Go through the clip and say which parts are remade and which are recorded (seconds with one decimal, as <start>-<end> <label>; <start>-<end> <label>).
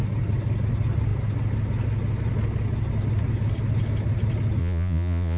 0.0-4.6 recorded; 4.6-5.4 remade